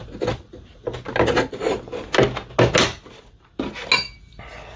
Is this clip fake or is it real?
real